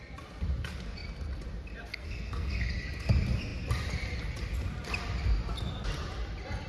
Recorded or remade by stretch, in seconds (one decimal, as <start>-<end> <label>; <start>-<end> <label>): 0.0-1.9 recorded; 1.9-2.7 remade; 2.7-6.7 recorded